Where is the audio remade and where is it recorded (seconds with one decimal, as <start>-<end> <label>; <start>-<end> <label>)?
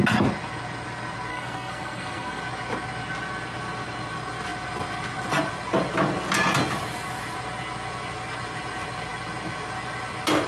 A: 0.0-1.3 recorded; 1.3-2.4 remade; 2.4-10.5 recorded